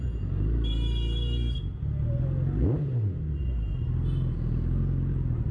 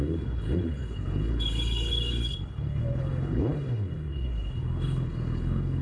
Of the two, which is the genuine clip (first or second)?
first